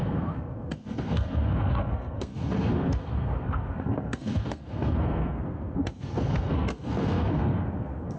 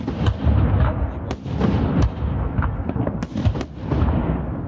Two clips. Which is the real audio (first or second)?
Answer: second